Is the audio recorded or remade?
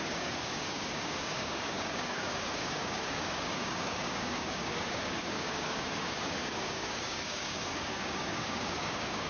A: remade